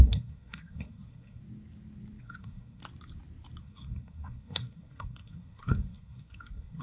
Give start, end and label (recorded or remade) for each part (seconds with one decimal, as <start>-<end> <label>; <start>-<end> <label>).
0.0-1.4 remade; 1.4-2.2 recorded; 2.2-2.8 remade; 2.8-3.6 recorded; 3.6-6.8 remade